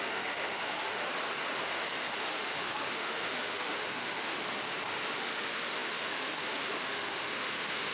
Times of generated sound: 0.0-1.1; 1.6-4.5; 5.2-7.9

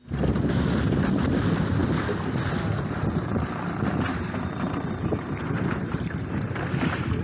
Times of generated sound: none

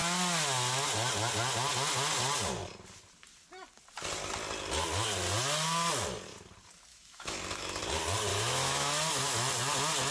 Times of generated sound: 6.9-7.8; 8.3-9.5

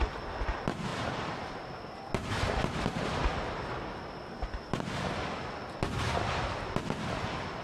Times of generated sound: none